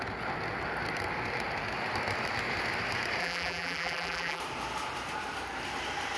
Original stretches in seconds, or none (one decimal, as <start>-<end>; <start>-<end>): 0.0-3.2; 4.4-6.2